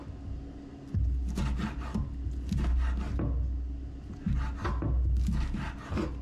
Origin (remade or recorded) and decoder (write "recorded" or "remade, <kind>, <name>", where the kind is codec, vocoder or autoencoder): recorded